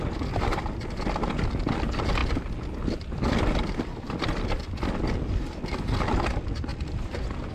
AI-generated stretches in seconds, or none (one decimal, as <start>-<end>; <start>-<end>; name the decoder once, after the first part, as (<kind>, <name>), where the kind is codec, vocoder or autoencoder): none